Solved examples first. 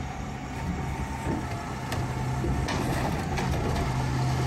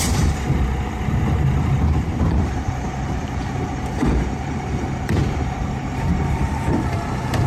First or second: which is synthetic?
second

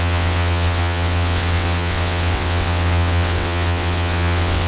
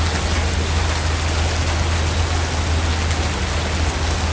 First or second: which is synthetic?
first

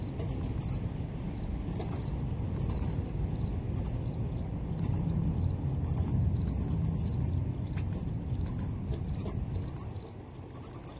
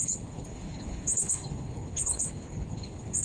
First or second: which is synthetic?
second